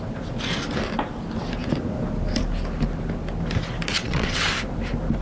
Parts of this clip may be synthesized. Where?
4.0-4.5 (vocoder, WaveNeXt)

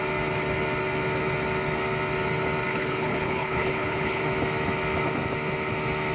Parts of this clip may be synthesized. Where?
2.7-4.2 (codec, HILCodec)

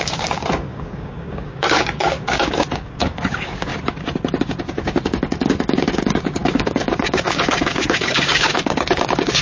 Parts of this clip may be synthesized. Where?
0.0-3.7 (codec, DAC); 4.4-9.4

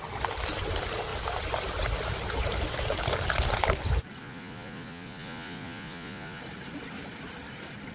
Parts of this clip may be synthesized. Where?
4.2-6.4 (vocoder, Vocos)